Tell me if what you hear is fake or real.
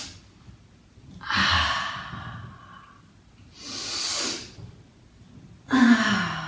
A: real